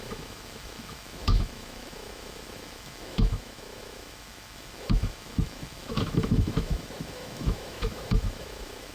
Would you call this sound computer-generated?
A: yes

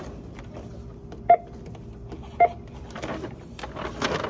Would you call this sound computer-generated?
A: no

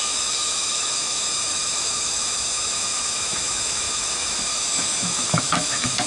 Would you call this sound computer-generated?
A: yes